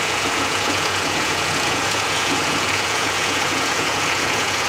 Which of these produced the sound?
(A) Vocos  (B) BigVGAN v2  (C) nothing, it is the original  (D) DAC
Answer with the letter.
A